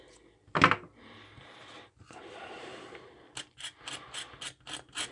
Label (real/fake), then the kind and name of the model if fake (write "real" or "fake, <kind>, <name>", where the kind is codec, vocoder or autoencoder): real